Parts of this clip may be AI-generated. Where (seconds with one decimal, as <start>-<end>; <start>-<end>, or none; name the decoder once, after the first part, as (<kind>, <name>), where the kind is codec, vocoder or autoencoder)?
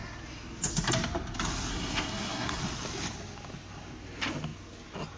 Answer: 1.7-2.6 (codec, SNAC)